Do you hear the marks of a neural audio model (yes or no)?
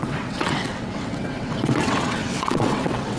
yes